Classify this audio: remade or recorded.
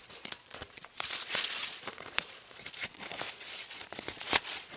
remade